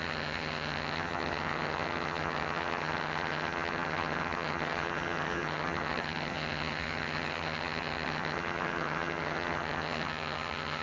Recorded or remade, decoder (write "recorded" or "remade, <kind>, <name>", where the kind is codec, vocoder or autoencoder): remade, vocoder, HiFi-GAN